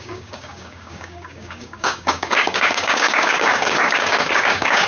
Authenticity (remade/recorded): remade